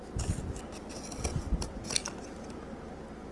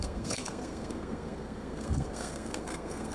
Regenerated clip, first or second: second